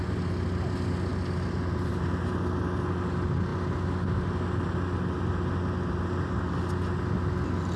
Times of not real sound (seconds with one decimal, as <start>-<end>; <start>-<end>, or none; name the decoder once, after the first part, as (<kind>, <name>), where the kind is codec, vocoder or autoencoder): 1.1-2.1 (vocoder, BigVGAN v2)